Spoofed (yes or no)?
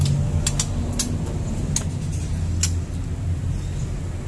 no